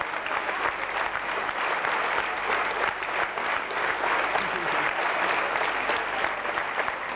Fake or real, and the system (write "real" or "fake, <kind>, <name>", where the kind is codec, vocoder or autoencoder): real